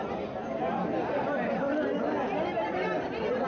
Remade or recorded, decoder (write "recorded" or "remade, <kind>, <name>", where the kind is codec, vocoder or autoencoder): recorded